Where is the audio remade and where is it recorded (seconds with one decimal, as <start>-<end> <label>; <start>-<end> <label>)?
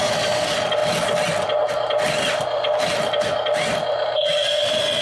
0.0-5.0 recorded